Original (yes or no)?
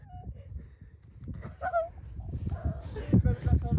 yes